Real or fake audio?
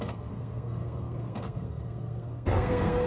fake